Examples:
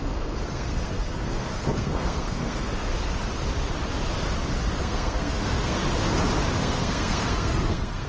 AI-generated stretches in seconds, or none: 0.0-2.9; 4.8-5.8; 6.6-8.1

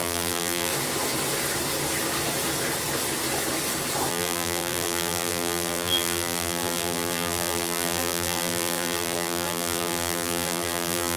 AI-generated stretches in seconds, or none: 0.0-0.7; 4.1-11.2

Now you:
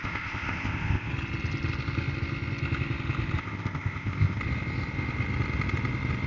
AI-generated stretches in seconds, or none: 0.0-1.1; 3.4-4.4

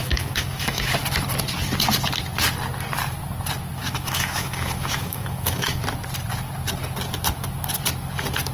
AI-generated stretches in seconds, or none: 0.0-0.9; 3.8-5.8